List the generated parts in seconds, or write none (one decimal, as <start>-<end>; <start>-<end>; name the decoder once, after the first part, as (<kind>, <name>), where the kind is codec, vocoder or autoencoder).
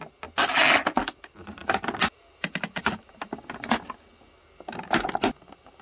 none